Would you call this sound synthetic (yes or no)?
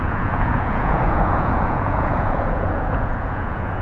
yes